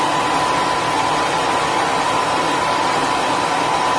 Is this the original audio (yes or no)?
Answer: yes